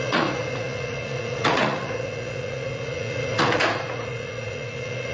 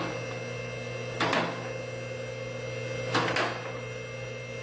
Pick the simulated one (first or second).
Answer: first